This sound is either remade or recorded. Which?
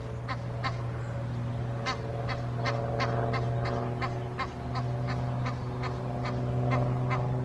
recorded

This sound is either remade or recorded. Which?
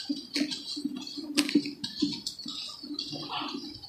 recorded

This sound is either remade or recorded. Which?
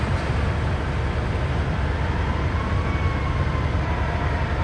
recorded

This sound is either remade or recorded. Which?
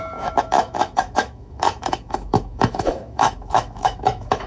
remade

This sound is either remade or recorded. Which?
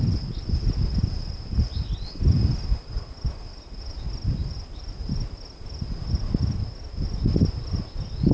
recorded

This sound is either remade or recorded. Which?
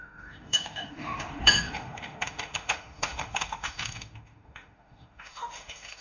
remade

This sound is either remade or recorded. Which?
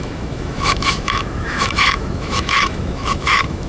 remade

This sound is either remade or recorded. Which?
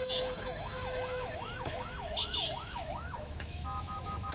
remade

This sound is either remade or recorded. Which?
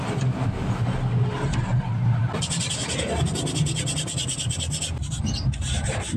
recorded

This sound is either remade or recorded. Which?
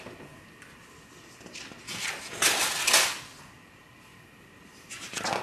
recorded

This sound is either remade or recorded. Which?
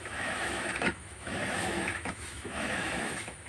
remade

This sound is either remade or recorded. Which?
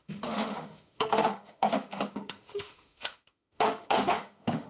remade